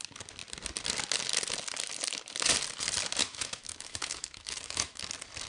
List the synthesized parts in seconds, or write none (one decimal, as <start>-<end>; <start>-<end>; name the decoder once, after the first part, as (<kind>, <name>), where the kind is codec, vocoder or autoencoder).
3.2-5.0 (autoencoder, DAC-VAE)